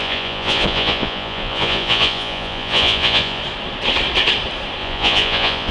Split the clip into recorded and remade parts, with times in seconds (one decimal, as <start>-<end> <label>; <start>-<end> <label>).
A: 0.0-3.4 remade; 3.4-4.8 recorded; 4.8-5.7 remade